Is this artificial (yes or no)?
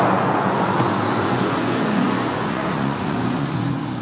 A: yes